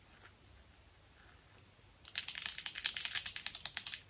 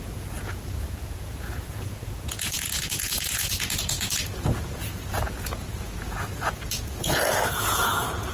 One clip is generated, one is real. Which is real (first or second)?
first